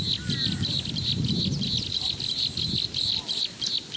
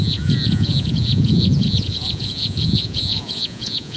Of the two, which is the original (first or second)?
first